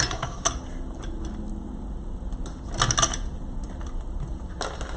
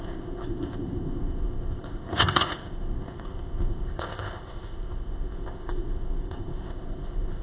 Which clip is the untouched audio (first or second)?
first